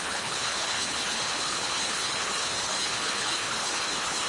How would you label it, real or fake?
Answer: fake